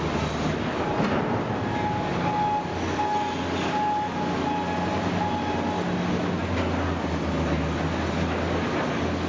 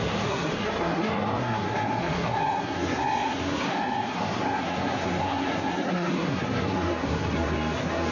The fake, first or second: second